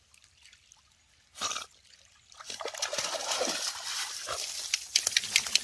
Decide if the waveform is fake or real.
real